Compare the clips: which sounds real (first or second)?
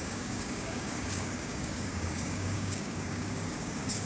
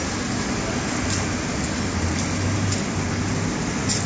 second